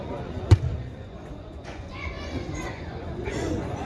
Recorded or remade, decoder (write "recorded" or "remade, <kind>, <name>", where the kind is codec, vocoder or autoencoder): remade, vocoder, Vocos